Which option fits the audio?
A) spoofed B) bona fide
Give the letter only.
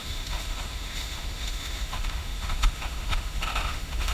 A